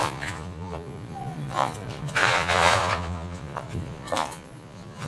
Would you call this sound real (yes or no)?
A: no